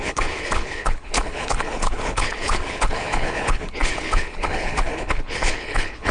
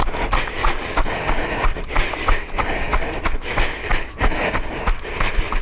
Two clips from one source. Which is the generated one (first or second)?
first